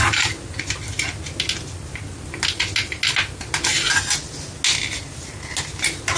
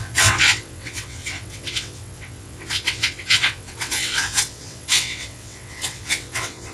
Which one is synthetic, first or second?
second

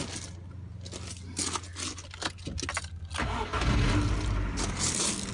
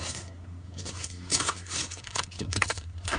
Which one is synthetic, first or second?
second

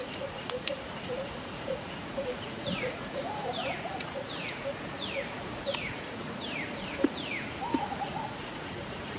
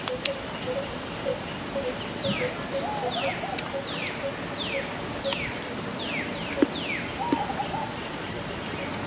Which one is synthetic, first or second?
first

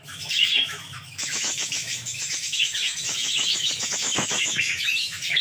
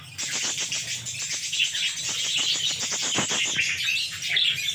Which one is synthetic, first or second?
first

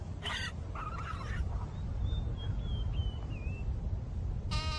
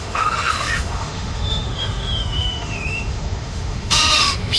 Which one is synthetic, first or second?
second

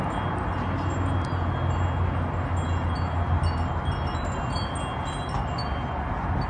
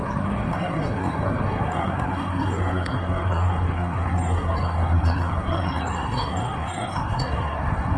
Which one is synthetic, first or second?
second